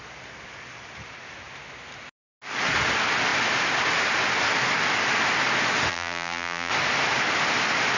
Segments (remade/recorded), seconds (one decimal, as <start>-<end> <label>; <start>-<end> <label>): 0.0-5.9 recorded; 5.9-6.7 remade; 6.7-8.0 recorded